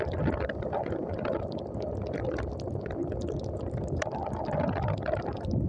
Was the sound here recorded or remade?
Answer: recorded